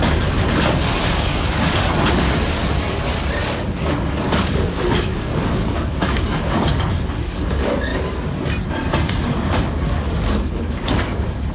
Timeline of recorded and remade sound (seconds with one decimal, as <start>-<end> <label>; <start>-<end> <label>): 0.0-7.9 remade; 7.9-9.5 recorded; 9.5-11.5 remade